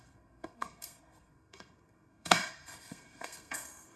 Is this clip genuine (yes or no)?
no